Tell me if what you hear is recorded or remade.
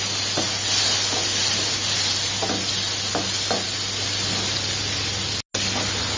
recorded